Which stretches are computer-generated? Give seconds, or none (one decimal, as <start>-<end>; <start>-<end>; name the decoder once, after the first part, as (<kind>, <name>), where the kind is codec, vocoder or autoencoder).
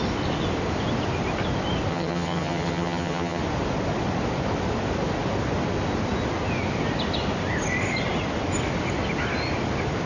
1.9-3.4 (vocoder, HiFi-GAN)